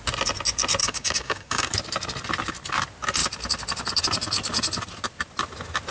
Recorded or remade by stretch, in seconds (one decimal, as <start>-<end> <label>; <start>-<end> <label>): 0.0-0.8 recorded; 0.8-1.7 remade; 1.7-5.9 recorded